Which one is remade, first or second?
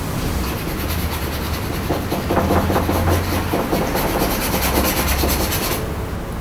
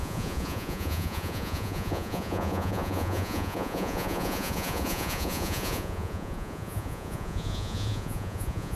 second